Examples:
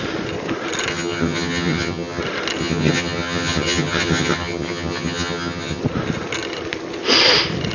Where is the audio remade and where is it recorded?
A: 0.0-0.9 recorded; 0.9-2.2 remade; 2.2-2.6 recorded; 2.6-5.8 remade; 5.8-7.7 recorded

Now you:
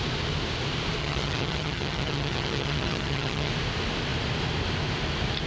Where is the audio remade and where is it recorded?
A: 0.0-1.0 recorded; 1.0-3.5 remade; 3.5-5.5 recorded

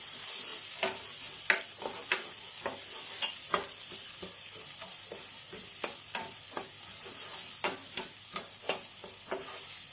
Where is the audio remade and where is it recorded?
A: 0.0-9.9 recorded

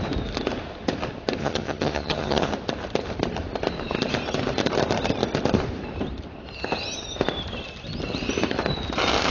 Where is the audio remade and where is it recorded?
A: 0.0-1.4 recorded; 1.4-2.5 remade; 2.5-9.3 recorded

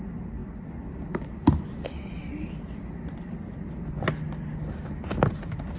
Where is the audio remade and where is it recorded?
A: 0.0-5.8 recorded